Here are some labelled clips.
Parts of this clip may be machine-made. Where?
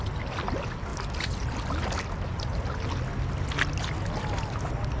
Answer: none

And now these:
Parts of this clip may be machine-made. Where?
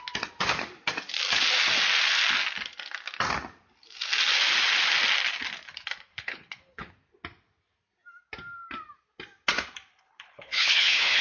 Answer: 6.1-6.9; 9.9-11.2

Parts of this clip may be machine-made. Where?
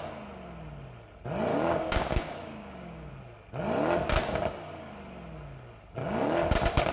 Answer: 1.5-3.1; 4.2-4.9; 6.0-6.5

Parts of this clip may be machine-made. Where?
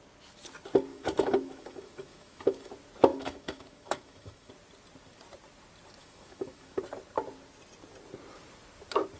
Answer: 0.9-2.7; 3.1-4.5; 6.0-6.8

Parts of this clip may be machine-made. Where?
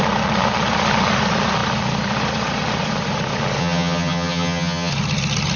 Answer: 3.6-4.9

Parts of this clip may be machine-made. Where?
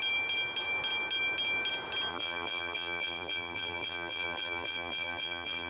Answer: 2.1-5.7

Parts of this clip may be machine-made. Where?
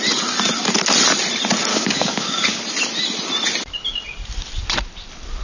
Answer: 1.7-2.6